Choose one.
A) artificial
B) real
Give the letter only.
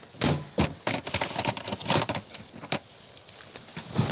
B